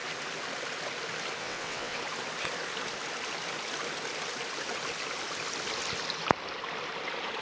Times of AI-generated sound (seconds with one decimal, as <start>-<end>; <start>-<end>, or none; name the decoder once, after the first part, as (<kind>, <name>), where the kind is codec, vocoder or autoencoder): 1.4-2.0 (vocoder, WaveNeXt)